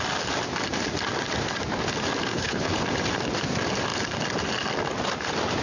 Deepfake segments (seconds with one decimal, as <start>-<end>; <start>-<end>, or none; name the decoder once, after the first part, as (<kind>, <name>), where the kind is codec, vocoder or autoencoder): 2.3-2.8 (codec, HILCodec)